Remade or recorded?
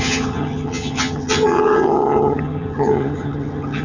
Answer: remade